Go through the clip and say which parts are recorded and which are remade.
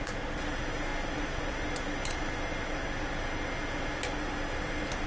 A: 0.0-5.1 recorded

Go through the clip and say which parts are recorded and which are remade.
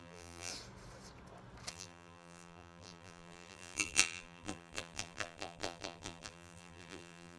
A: 0.0-0.5 remade; 0.5-1.7 recorded; 1.7-7.4 remade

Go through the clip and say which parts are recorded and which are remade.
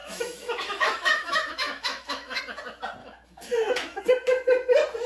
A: 0.0-2.4 remade; 2.4-3.0 recorded; 3.0-4.0 remade; 4.0-5.1 recorded